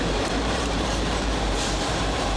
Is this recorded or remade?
remade